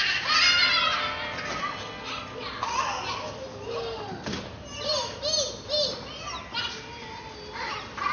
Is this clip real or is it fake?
real